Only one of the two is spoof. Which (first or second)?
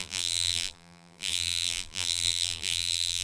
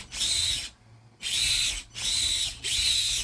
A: first